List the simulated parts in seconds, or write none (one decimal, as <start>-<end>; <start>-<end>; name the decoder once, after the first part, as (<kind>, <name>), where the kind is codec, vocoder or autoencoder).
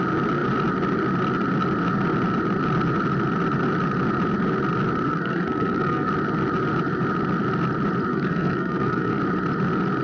5.1-6.1 (codec, SNAC); 8.1-9.2